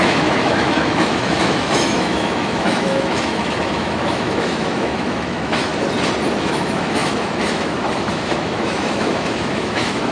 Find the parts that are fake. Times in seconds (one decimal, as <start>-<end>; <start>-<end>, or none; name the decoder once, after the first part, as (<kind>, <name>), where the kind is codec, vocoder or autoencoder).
0.0-5.7 (autoencoder, DAC-VAE); 6.4-10.1